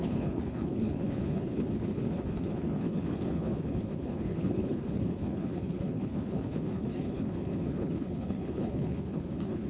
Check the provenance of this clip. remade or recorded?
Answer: remade